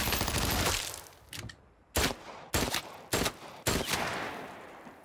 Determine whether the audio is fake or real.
real